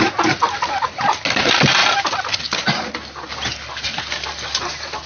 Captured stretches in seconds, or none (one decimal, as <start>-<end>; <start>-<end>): 0.0-5.1